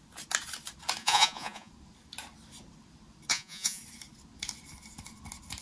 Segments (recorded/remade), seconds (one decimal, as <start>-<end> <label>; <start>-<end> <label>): 0.0-1.0 recorded; 1.0-1.7 remade; 1.7-3.3 recorded; 3.3-3.8 remade; 3.8-5.6 recorded